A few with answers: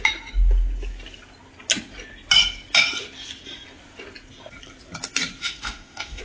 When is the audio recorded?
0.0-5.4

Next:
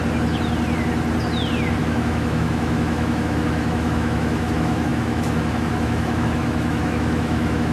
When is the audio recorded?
0.0-1.8

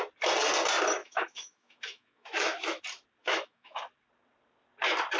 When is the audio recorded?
0.0-1.0; 2.8-3.2; 3.8-5.2

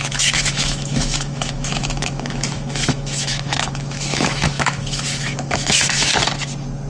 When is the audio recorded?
6.1-6.9

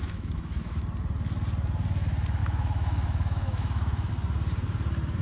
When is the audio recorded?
0.8-2.4; 4.1-5.2

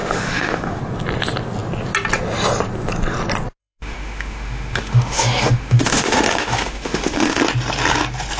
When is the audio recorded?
0.8-3.6; 7.4-8.4

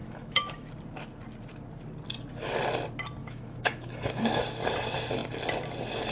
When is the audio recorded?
0.7-3.2; 4.4-6.1